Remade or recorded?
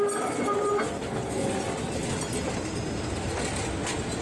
recorded